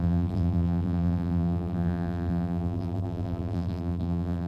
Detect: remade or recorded remade